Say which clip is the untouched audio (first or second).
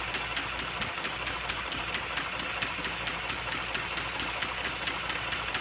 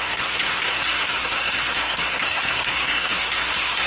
first